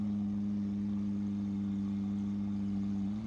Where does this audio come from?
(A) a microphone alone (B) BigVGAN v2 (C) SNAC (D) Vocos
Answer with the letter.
A